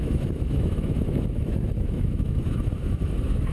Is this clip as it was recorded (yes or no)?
no